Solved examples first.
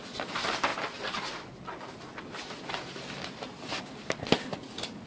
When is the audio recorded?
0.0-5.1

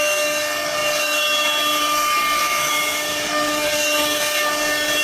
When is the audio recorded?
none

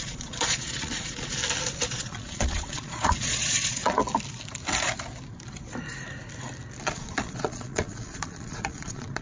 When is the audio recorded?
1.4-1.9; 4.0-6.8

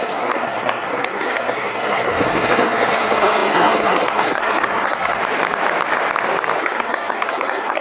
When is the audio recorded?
5.2-6.6

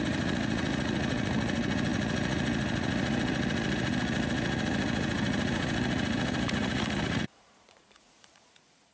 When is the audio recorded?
none